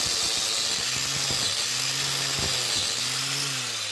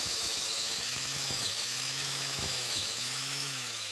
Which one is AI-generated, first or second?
second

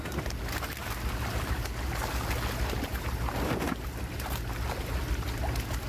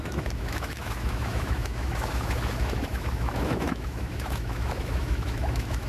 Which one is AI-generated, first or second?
second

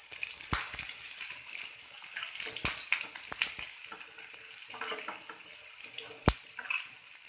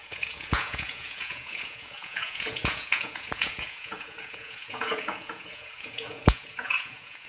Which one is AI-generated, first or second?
second